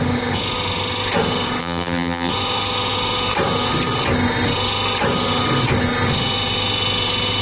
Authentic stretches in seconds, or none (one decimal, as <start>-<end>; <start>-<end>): 0.0-1.6; 2.3-7.4